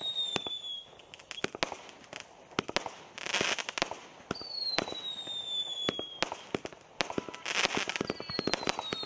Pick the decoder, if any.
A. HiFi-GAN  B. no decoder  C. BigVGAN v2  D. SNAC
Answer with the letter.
B